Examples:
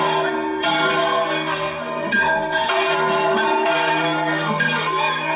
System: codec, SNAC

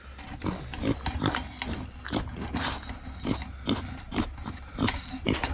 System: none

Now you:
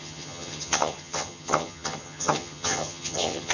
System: vocoder, HiFi-GAN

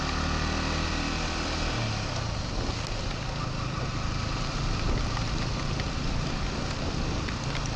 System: none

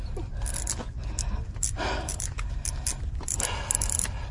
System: none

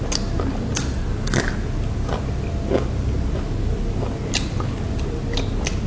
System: none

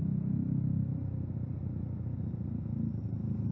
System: none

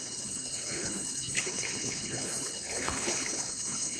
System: codec, HILCodec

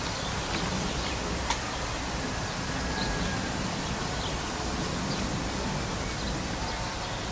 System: none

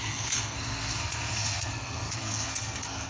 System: codec, SNAC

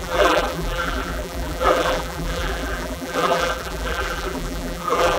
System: vocoder, BigVGAN v2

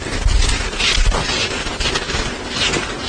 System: none